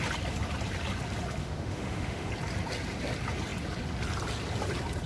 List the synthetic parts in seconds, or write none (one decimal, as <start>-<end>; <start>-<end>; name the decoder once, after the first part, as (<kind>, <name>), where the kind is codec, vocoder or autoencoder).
1.4-2.3 (autoencoder, DAC-VAE)